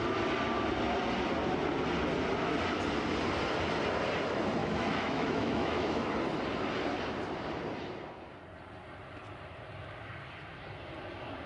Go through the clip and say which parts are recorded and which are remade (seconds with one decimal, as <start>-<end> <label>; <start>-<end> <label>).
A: 0.0-4.6 recorded; 4.6-6.1 remade; 6.1-11.5 recorded